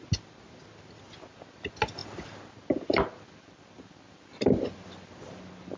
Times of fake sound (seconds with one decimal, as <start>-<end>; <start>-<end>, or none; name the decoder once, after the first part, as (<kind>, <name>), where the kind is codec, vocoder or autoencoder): none